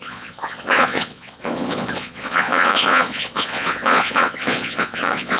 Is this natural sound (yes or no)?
no